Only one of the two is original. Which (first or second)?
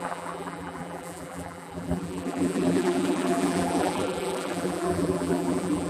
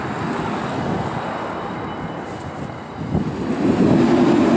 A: second